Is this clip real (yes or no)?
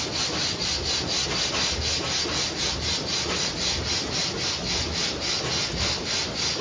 yes